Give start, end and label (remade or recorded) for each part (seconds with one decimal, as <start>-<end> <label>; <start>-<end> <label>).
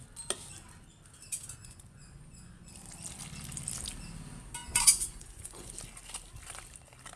0.0-1.6 recorded; 1.6-2.7 remade; 2.7-4.6 recorded; 4.6-5.7 remade; 5.7-7.2 recorded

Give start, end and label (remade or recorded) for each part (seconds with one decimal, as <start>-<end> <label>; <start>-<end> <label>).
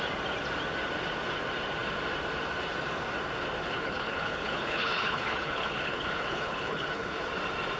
0.0-3.6 recorded; 3.6-7.2 remade; 7.2-7.8 recorded